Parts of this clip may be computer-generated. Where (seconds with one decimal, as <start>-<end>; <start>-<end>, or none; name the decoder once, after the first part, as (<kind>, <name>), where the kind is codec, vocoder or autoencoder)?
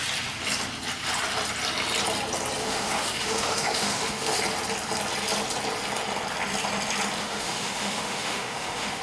2.6-4.4 (autoencoder, DAC-VAE); 7.2-9.0